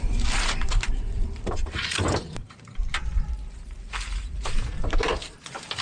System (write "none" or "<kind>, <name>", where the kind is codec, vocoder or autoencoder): vocoder, BigVGAN v2